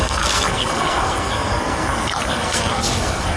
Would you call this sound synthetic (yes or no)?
yes